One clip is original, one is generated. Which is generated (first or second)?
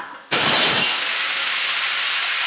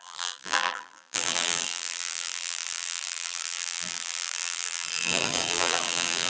second